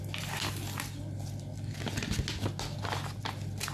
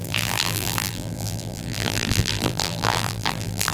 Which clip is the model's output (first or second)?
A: second